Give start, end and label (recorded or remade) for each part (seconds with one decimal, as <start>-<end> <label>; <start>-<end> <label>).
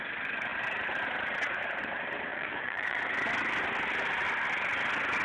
0.0-2.3 recorded; 2.3-3.0 remade; 3.0-5.2 recorded